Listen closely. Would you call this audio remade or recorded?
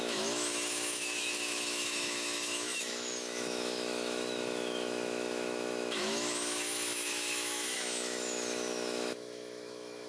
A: remade